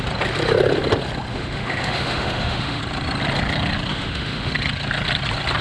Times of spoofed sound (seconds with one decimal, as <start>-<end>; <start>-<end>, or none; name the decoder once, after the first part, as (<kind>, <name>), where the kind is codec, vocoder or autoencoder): 1.3-2.8 (autoencoder, DAC-VAE); 3.9-4.5